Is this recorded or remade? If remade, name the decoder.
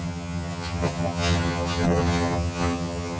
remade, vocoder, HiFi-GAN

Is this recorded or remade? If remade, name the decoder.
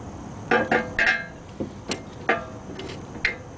recorded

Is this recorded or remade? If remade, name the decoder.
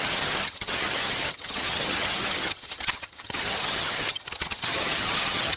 remade, vocoder, HiFi-GAN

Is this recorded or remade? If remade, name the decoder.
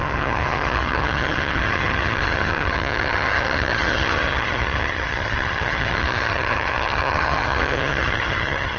remade, vocoder, HiFi-GAN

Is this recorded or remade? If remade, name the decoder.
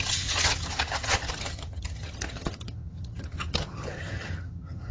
remade, vocoder, HiFi-GAN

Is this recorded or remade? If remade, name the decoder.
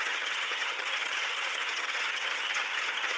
remade, vocoder, HiFi-GAN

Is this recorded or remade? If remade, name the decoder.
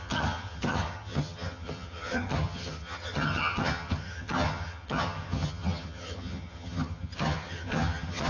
remade, vocoder, HiFi-GAN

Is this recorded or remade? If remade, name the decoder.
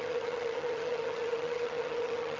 remade, vocoder, HiFi-GAN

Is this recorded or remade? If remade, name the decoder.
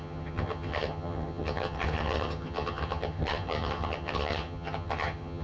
remade, vocoder, HiFi-GAN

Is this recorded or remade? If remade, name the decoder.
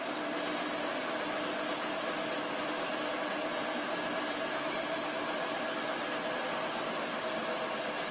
recorded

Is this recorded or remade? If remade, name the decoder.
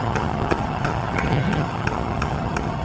remade, vocoder, HiFi-GAN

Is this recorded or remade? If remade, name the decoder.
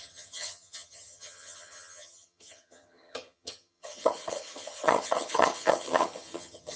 remade, vocoder, HiFi-GAN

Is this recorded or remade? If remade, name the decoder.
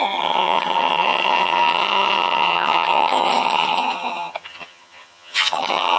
remade, vocoder, HiFi-GAN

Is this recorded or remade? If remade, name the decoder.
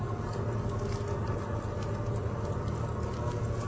recorded